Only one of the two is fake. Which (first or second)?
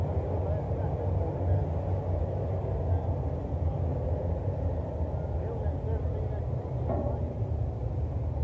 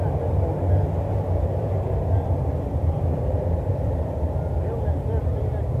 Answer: second